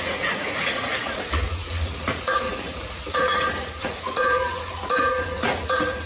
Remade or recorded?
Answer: remade